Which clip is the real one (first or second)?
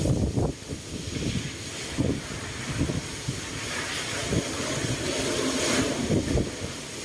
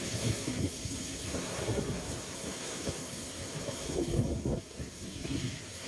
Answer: first